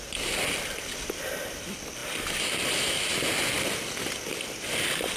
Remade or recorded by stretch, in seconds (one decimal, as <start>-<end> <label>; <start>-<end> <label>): 0.0-5.2 recorded